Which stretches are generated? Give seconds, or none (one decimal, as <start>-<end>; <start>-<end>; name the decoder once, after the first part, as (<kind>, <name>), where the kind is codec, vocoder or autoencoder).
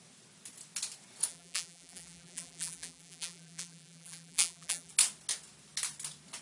1.3-4.9 (vocoder, BigVGAN v2)